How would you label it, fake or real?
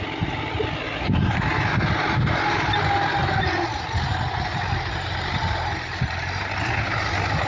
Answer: real